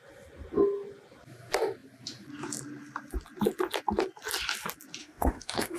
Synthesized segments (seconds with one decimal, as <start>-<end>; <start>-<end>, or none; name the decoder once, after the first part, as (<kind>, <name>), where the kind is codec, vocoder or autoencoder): 5.0-5.8 (autoencoder, DAC-VAE)